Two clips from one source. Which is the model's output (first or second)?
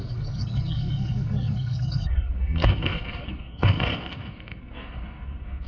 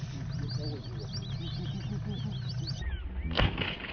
first